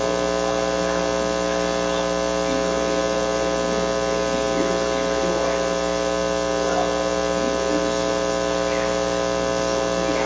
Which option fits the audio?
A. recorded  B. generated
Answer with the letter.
A